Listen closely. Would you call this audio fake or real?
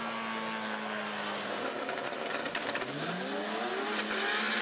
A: real